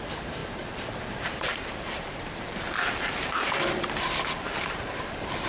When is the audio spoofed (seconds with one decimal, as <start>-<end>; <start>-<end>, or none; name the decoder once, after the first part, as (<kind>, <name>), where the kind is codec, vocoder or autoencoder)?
0.0-5.5 (vocoder, BigVGAN v2)